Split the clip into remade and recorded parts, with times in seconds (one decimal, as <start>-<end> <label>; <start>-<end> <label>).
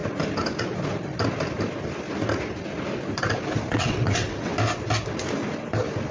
0.0-3.7 recorded; 3.7-4.5 remade; 4.5-6.1 recorded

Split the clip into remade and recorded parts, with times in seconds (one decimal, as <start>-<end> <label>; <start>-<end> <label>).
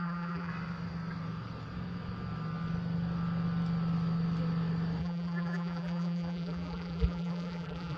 0.0-0.5 remade; 0.5-5.0 recorded; 5.0-8.0 remade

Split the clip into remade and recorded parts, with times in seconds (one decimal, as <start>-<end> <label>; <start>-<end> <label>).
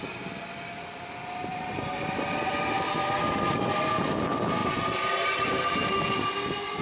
0.0-1.5 recorded; 1.5-2.5 remade; 2.5-6.8 recorded